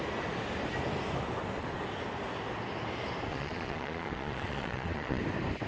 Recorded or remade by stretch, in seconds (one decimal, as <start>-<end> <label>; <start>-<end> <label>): 0.0-3.3 recorded; 3.3-5.2 remade; 5.2-5.7 recorded